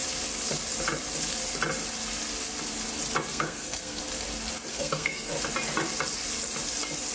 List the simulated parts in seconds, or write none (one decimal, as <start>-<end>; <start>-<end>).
3.3-4.0; 4.7-5.3